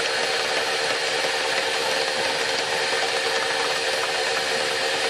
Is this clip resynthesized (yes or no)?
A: yes